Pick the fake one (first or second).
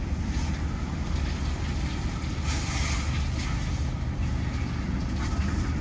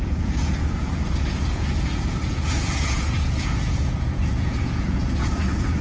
second